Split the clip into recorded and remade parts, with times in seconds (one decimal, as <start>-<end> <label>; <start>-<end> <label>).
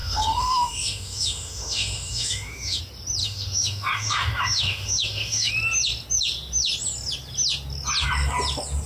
0.0-2.8 remade; 2.8-3.2 recorded; 3.2-5.5 remade; 5.5-8.9 recorded